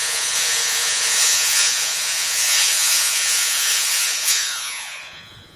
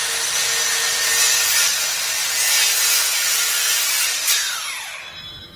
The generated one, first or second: first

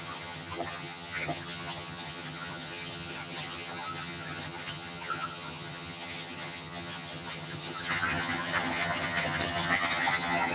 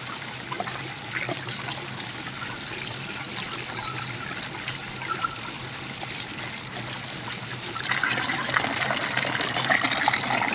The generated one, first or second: first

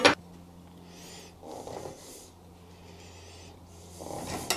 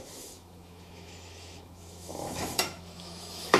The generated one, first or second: second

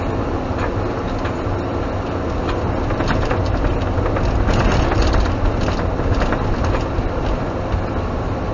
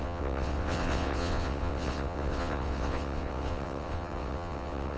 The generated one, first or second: second